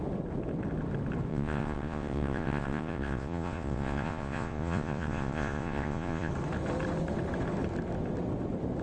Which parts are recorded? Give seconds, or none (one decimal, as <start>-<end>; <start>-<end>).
0.0-1.3; 6.3-8.8

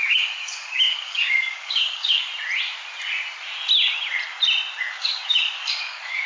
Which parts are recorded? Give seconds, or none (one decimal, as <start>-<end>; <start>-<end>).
2.3-4.8

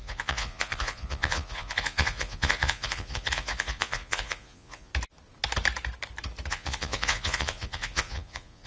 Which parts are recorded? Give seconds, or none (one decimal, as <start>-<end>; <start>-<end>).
4.9-6.5

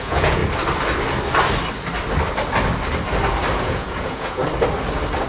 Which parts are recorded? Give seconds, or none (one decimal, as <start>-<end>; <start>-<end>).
0.4-3.6; 4.4-5.3

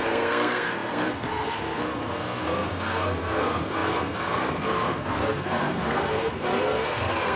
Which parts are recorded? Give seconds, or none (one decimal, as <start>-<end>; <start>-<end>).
none

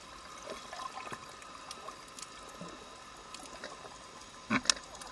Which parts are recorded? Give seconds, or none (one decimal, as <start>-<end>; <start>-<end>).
0.0-5.1

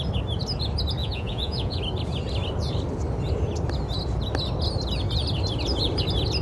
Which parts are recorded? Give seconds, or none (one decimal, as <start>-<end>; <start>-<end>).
0.0-1.0; 1.8-6.4